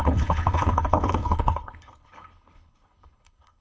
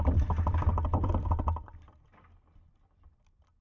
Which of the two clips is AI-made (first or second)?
first